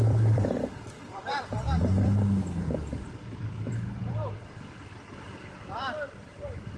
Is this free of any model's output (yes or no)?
no